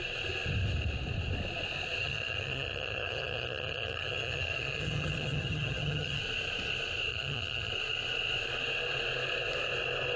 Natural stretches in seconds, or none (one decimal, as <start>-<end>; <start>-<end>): 0.0-2.0; 6.2-7.1; 7.7-10.2